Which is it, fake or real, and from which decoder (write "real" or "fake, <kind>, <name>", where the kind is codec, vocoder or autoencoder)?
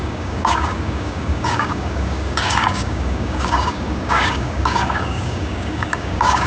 fake, codec, DAC